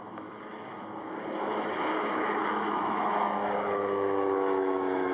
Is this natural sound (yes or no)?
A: no